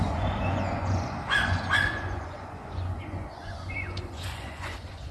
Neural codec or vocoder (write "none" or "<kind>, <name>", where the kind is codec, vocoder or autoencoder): vocoder, Vocos